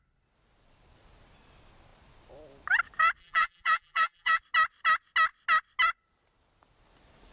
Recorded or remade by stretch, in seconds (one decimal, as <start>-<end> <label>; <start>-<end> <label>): 0.0-3.2 recorded; 3.2-4.4 remade; 4.4-7.3 recorded